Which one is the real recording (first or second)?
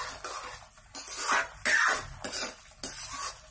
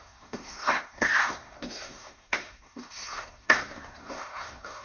first